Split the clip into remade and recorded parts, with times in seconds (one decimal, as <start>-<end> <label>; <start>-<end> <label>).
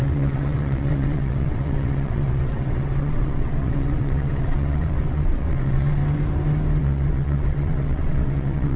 0.0-6.0 remade; 6.0-6.8 recorded; 6.8-8.8 remade